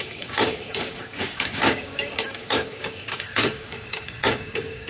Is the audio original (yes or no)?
no